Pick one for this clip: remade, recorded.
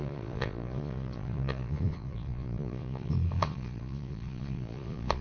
remade